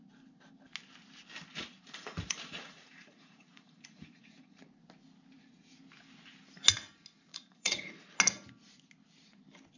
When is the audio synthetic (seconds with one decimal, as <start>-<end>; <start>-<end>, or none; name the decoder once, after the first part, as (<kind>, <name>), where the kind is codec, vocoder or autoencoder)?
1.5-4.6 (vocoder, Vocos); 7.3-7.9